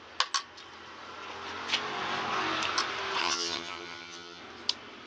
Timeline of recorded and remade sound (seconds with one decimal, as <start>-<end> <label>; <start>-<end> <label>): 0.0-3.2 recorded; 3.2-4.4 remade; 4.4-5.1 recorded